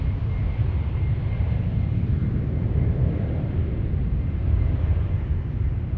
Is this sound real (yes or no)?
yes